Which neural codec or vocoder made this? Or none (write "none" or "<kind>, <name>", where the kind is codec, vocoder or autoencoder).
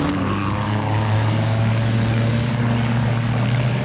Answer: codec, DAC